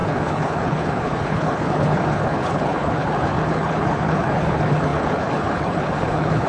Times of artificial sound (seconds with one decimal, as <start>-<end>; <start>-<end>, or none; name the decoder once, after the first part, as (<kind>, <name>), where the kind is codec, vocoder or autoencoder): 0.0-6.5 (codec, HILCodec)